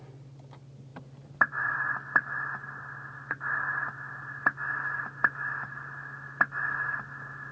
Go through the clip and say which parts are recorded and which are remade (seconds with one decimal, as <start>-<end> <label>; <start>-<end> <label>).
0.0-0.9 recorded; 0.9-1.9 remade; 1.9-7.5 recorded